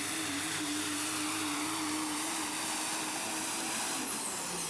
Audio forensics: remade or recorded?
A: recorded